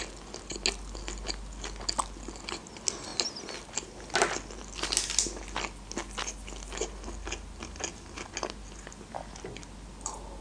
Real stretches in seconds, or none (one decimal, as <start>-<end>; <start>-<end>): 0.0-10.4